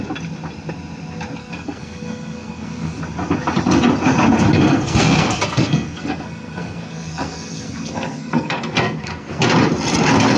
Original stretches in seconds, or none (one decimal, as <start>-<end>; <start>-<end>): 0.0-1.4; 3.0-4.5; 9.4-10.4